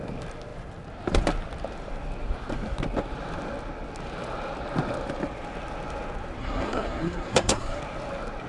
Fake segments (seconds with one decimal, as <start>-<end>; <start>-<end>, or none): 6.4-7.8